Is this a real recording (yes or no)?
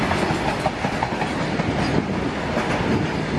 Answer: yes